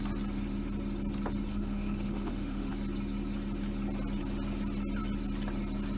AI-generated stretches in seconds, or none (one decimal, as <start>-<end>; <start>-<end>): 1.5-2.7